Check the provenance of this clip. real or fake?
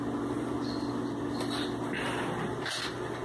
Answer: real